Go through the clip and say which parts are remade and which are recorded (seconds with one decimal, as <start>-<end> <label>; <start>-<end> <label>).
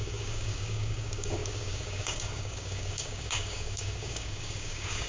0.0-5.1 remade